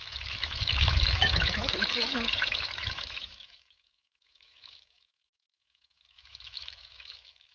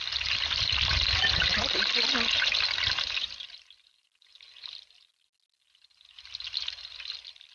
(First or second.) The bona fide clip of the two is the second